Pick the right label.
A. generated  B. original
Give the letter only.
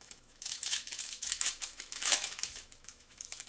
A